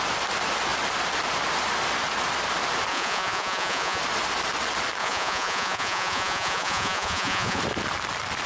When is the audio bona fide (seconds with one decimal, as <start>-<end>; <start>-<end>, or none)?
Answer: 0.0-2.9; 4.0-5.0; 7.6-8.5